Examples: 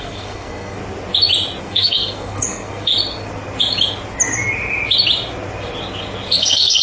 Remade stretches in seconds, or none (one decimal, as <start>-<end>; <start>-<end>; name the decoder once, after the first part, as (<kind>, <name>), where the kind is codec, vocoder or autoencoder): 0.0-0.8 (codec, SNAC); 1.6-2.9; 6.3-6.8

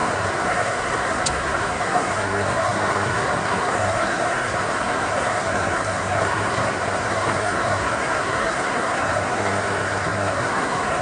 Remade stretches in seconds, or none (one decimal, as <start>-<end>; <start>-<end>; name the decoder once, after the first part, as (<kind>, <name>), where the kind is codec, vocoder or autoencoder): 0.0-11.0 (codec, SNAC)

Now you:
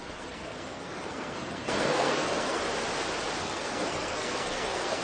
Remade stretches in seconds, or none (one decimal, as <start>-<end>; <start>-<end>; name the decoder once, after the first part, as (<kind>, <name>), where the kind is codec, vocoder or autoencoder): 0.0-2.6 (codec, SNAC); 3.4-5.0